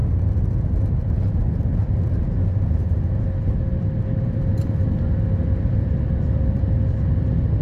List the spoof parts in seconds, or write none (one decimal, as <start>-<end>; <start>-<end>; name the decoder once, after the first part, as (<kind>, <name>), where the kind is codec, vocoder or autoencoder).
3.8-7.6 (vocoder, BigVGAN v2)

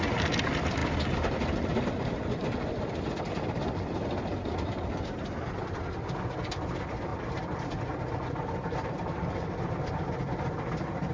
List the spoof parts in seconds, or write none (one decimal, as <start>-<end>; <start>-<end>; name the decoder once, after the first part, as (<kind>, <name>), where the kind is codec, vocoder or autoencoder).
7.1-10.3 (vocoder, BigVGAN v2)

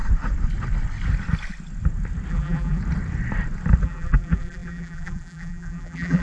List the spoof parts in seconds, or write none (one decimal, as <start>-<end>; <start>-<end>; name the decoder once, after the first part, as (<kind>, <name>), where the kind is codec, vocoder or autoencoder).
2.3-2.8 (vocoder, BigVGAN v2); 3.8-6.2